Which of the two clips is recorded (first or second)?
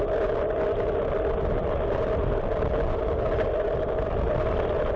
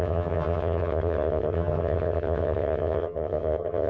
first